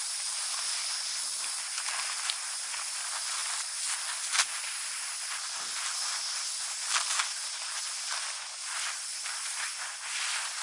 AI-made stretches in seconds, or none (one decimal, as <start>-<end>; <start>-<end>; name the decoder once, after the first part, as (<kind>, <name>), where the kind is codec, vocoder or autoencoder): none